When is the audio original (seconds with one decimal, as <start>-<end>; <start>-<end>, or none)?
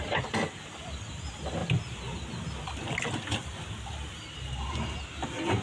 0.0-5.6